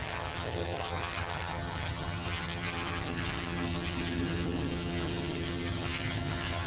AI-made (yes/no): yes